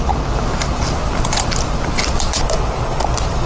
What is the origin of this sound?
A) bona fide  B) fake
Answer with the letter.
A